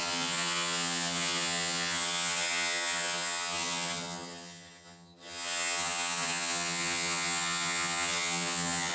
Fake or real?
fake